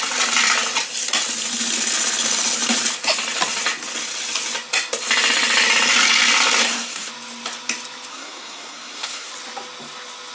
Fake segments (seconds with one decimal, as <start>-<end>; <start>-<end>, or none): 6.6-7.1; 8.1-9.3